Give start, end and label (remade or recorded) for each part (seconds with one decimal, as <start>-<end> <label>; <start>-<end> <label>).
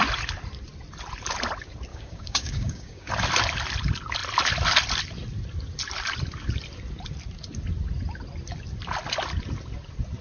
0.0-1.9 recorded; 1.9-3.1 remade; 3.1-10.2 recorded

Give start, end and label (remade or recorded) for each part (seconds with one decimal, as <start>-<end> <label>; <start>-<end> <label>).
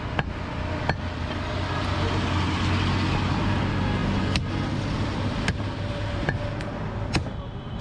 0.0-7.8 recorded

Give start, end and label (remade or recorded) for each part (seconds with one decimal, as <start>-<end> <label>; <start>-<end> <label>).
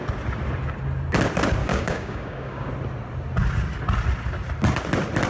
0.0-1.6 recorded; 1.6-2.7 remade; 2.7-5.3 recorded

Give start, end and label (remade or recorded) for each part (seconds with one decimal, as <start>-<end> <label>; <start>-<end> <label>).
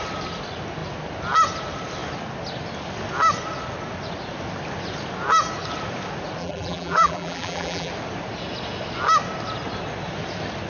0.0-6.4 recorded; 6.4-7.9 remade; 7.9-10.7 recorded